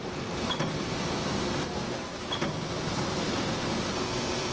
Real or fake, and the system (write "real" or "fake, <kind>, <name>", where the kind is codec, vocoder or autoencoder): real